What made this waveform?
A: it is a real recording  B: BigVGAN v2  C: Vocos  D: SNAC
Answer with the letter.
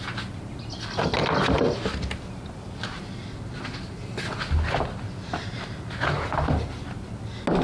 A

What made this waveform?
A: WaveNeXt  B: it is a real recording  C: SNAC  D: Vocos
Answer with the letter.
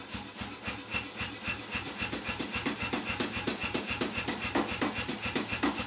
B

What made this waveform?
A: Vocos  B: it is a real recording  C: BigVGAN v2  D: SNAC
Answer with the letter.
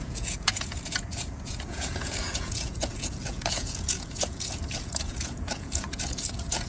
A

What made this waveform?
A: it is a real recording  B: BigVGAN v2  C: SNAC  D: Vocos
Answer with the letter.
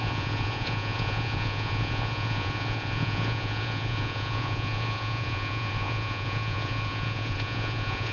D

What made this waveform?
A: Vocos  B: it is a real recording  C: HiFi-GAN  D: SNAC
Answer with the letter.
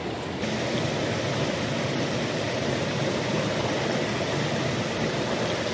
B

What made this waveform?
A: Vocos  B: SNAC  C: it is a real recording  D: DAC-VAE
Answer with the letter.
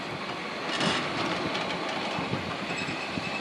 C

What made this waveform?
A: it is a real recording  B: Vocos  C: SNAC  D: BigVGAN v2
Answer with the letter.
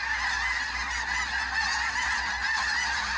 A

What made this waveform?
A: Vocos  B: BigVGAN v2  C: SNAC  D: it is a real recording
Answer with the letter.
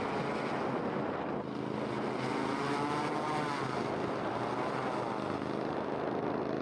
D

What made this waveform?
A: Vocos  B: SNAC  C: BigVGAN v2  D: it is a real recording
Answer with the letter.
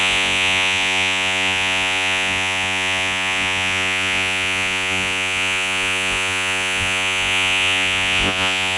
A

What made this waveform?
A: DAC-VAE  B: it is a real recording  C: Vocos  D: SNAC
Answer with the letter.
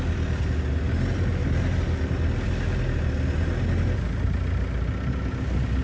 B